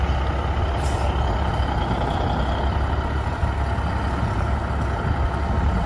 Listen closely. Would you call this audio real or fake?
real